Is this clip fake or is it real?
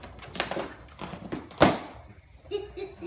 real